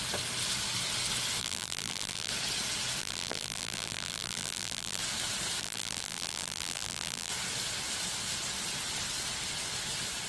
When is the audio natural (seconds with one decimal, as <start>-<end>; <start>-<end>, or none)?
0.0-1.4; 2.3-3.0; 5.0-5.6; 7.3-10.3